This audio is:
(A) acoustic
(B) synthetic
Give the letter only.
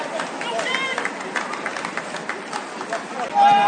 A